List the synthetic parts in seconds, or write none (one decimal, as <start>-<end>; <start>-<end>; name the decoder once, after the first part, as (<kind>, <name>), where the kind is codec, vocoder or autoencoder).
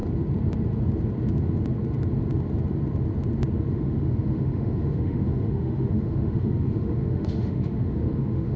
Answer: 3.7-8.6 (autoencoder, DAC-VAE)